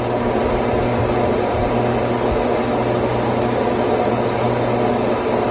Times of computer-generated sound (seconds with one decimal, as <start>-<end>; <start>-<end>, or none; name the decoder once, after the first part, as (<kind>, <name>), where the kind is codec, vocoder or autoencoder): none